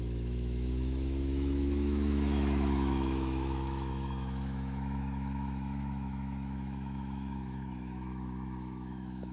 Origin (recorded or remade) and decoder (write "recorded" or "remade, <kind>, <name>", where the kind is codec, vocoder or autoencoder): remade, autoencoder, DAC-VAE